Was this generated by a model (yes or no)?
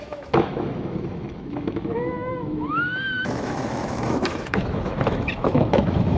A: yes